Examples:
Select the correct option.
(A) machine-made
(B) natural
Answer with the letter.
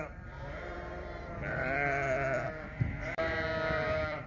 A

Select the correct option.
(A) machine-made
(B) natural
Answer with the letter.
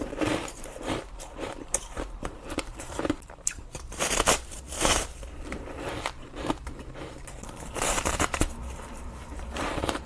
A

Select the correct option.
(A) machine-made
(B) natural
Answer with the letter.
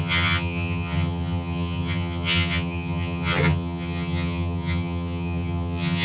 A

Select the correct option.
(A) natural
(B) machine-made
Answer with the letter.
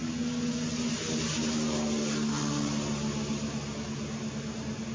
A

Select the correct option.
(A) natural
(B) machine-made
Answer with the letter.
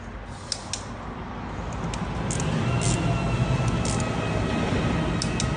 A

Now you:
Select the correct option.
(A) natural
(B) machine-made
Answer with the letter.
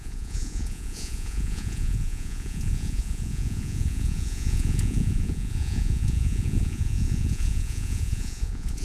B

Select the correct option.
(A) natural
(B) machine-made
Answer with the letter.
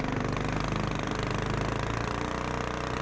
A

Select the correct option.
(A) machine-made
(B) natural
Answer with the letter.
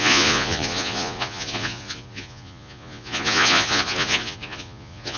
A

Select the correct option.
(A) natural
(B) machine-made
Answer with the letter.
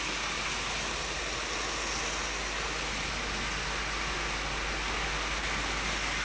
A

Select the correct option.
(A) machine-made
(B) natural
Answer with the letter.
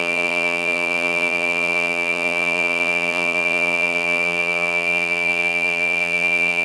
A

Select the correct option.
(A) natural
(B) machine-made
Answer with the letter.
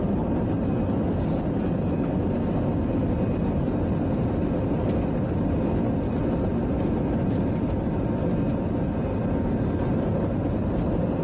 A